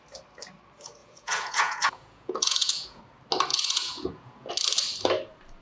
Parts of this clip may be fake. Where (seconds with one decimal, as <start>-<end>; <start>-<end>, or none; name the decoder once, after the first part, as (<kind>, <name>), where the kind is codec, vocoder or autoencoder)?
1.0-3.0 (vocoder, Vocos); 3.5-4.5